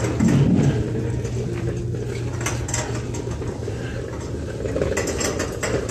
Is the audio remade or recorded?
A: recorded